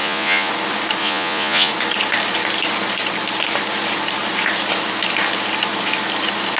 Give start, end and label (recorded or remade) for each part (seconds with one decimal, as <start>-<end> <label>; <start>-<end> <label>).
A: 0.0-0.5 remade; 0.5-1.0 recorded; 1.0-1.7 remade; 1.7-6.6 recorded